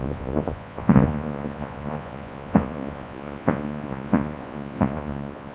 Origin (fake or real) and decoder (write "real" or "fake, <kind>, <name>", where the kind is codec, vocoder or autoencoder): fake, vocoder, Vocos